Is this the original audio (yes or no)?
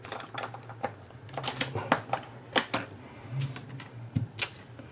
yes